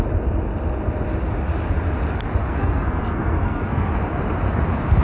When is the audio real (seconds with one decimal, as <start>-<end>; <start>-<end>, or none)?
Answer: 0.0-2.4; 3.9-5.0